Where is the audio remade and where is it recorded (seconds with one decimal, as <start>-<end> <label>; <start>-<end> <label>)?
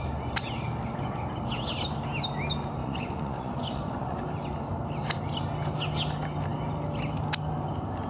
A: 0.0-2.8 recorded; 2.8-4.2 remade; 4.2-8.1 recorded